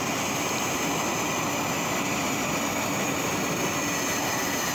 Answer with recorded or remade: recorded